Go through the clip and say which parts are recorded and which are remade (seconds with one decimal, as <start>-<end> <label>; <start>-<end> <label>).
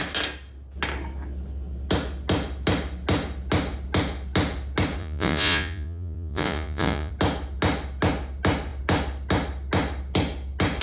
0.0-5.0 recorded; 5.0-7.1 remade; 7.1-10.8 recorded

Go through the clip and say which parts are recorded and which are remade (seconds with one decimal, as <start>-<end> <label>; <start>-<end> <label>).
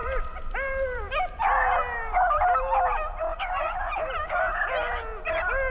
0.0-2.6 remade; 2.6-3.3 recorded; 3.3-4.7 remade; 4.7-5.7 recorded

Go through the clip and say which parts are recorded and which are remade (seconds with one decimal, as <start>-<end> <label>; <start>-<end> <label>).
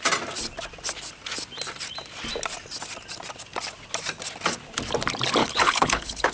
0.0-5.4 recorded; 5.4-6.3 remade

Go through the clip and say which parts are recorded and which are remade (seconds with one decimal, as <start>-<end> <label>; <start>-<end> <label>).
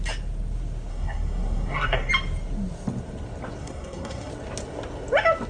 0.0-0.9 recorded; 0.9-2.1 remade; 2.1-3.6 recorded; 3.6-4.3 remade; 4.3-5.5 recorded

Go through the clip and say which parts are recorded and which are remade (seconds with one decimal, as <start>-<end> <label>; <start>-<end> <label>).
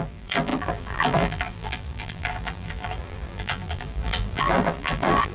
0.0-5.3 remade